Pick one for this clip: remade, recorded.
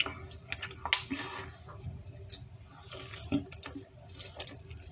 recorded